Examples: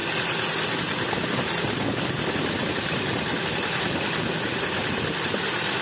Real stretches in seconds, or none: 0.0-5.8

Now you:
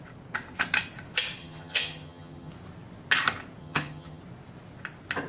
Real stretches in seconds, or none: 0.0-1.4; 2.5-3.6; 4.2-5.3